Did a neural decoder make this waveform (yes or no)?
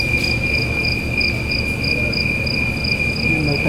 no